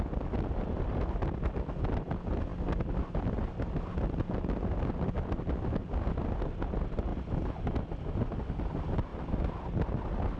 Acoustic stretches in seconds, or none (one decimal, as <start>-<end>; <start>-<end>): 0.0-10.4